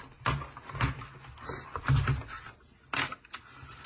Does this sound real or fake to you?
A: real